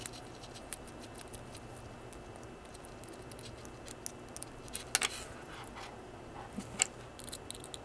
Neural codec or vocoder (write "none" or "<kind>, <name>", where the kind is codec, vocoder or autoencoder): none